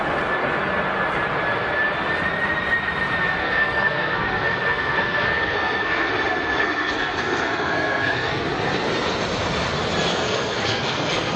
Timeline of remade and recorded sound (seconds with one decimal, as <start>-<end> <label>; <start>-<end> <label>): 0.0-3.4 recorded; 3.4-6.1 remade; 6.1-6.6 recorded; 6.6-8.4 remade; 8.4-10.1 recorded; 10.1-11.4 remade